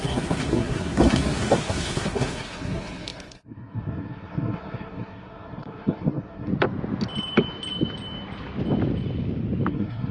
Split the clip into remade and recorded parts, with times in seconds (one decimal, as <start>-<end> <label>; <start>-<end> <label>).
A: 0.0-6.5 remade; 6.5-9.7 recorded; 9.7-10.1 remade

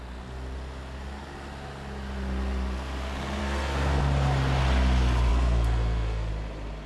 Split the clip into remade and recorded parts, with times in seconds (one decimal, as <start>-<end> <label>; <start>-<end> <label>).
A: 0.0-3.4 recorded; 3.4-4.0 remade; 4.0-5.3 recorded; 5.3-6.3 remade; 6.3-6.9 recorded

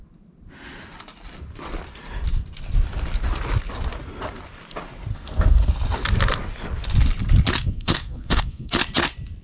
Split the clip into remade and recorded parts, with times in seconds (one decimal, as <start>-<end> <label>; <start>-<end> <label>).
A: 0.0-5.1 recorded; 5.1-5.7 remade; 5.7-7.6 recorded; 7.6-8.7 remade; 8.7-9.4 recorded

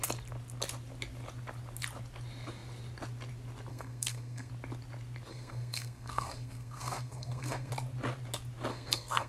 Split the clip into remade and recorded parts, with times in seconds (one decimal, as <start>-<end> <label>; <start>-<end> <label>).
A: 0.0-3.7 recorded; 3.7-4.5 remade; 4.5-5.3 recorded; 5.3-7.7 remade; 7.7-8.7 recorded; 8.7-9.3 remade

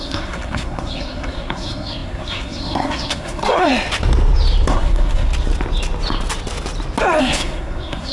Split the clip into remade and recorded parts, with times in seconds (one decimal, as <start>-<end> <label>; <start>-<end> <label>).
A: 0.0-3.7 remade; 3.7-4.7 recorded; 4.7-5.3 remade; 5.3-7.2 recorded; 7.2-8.1 remade